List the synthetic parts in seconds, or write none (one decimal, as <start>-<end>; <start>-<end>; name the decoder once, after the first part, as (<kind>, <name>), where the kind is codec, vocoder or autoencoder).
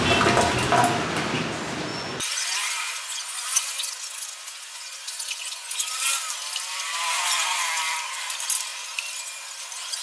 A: 1.9-5.9 (vocoder, Vocos)